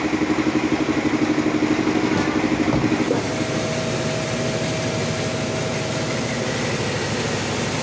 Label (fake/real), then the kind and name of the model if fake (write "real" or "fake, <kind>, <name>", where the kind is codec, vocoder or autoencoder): real